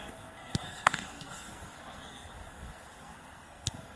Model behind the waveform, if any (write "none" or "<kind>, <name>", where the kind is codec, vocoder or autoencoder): codec, SNAC